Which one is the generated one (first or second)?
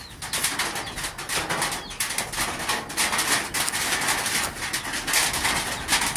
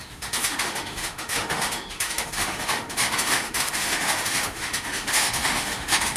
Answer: second